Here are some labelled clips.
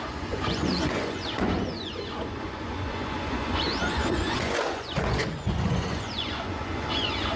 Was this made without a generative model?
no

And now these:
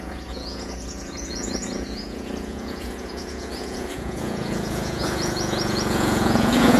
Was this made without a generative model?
no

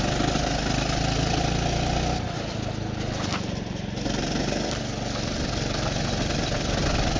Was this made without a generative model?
yes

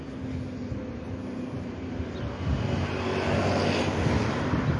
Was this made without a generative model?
yes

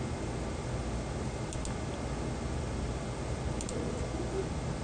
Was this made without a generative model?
yes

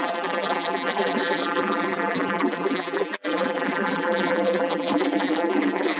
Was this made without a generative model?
no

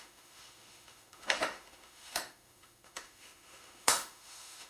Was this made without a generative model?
no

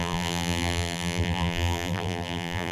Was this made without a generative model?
no